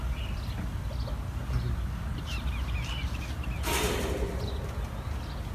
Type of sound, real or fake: real